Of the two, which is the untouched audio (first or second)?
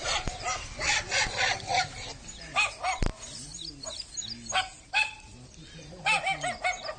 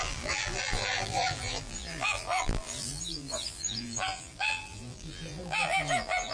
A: first